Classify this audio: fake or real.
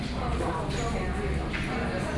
real